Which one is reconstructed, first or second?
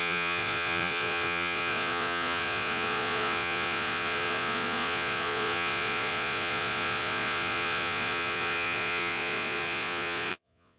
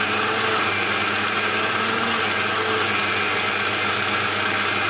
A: first